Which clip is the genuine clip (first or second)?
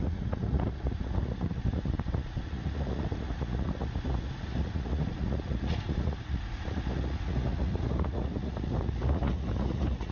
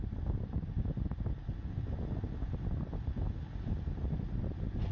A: second